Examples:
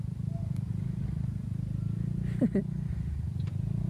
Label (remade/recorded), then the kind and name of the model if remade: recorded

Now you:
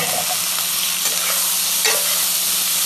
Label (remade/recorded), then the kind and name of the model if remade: recorded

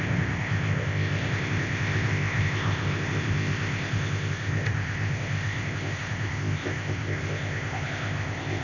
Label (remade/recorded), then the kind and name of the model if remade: remade, codec, ZipCodec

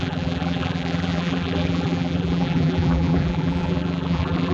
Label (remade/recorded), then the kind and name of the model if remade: remade, vocoder, BigVGAN v2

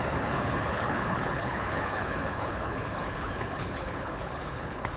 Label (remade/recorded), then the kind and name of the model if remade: remade, codec, HILCodec